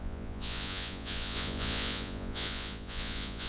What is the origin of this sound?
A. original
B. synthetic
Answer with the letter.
B